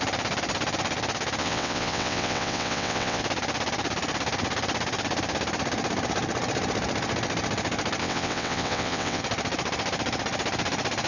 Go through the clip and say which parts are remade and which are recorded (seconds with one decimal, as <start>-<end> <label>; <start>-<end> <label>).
0.0-1.4 recorded; 1.4-3.2 remade; 3.2-8.0 recorded; 8.0-9.2 remade; 9.2-11.1 recorded